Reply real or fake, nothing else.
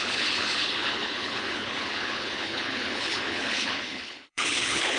fake